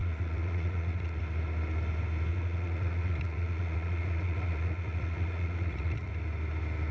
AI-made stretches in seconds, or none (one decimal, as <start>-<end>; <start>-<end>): 0.0-1.2; 2.3-6.1

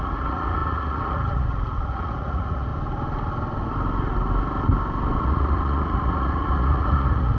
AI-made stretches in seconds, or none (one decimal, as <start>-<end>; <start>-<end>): 0.0-2.7; 5.2-7.4